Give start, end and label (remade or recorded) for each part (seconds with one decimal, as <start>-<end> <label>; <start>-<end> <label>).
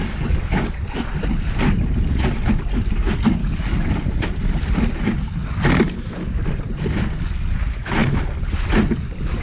0.0-1.0 remade; 1.0-3.4 recorded; 3.4-3.9 remade; 3.9-9.4 recorded